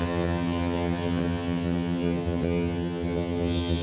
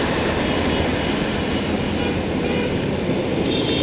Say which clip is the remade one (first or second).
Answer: first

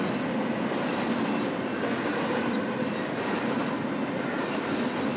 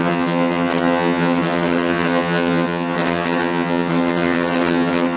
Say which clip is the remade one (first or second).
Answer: second